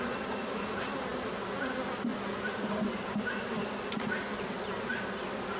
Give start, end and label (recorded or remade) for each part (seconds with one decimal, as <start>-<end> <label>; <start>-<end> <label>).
0.0-5.6 recorded